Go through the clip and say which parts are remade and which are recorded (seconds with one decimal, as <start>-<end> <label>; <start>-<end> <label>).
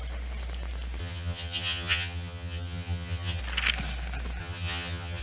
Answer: 0.0-1.0 recorded; 1.0-3.4 remade; 3.4-4.4 recorded; 4.4-5.2 remade